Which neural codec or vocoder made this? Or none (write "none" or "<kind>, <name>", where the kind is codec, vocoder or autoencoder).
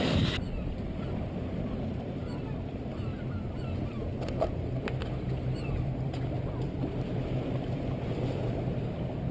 vocoder, BigVGAN v2